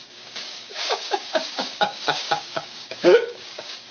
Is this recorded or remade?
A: remade